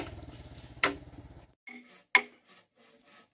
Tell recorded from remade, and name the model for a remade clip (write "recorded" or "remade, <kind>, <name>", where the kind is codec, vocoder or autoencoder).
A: recorded